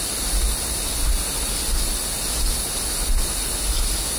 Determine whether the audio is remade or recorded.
recorded